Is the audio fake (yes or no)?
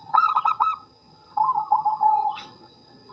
yes